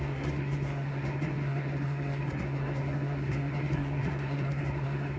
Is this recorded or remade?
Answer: remade